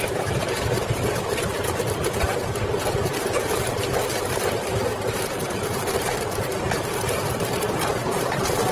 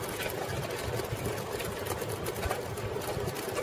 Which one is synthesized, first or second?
first